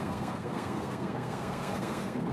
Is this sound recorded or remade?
remade